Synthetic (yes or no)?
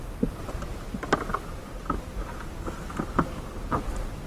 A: no